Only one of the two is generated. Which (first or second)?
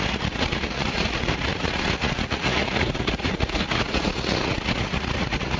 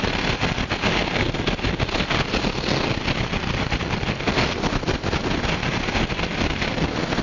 first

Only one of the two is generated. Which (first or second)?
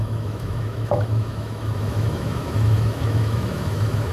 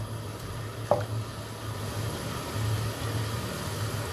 first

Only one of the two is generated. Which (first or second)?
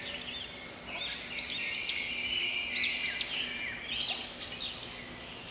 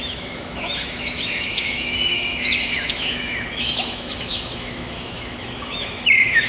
second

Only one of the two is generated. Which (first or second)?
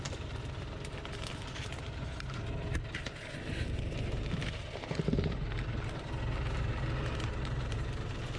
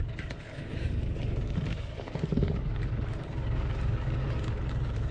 second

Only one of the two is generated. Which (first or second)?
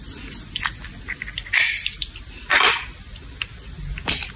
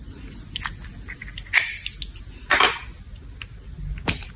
first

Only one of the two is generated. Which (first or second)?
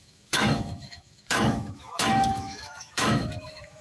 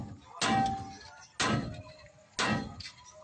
first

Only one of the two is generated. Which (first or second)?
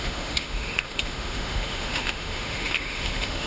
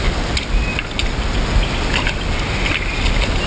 first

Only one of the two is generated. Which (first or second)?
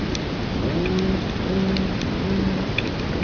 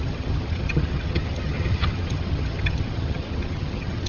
second